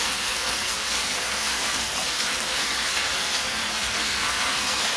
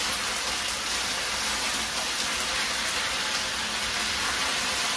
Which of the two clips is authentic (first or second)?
second